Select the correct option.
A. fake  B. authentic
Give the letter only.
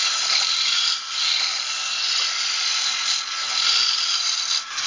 B